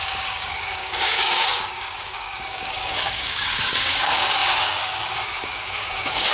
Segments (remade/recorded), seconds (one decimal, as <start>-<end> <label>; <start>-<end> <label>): 0.0-6.3 remade